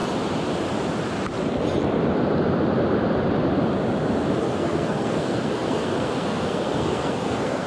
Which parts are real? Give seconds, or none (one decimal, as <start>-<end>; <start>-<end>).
0.0-4.4